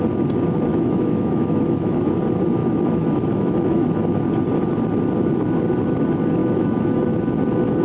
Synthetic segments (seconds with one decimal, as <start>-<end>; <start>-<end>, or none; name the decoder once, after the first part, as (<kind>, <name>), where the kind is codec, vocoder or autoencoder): 0.7-2.1 (autoencoder, DAC-VAE); 2.6-3.8; 6.4-7.0